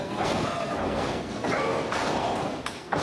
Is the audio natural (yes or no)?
no